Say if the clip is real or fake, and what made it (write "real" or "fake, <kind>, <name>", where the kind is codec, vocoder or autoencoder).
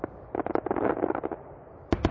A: real